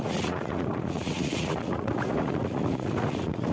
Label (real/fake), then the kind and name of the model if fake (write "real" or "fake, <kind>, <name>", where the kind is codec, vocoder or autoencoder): fake, vocoder, Vocos